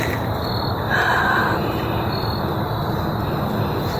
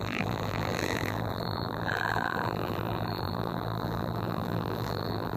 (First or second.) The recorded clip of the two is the first